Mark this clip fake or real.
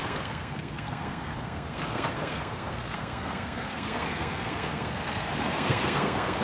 fake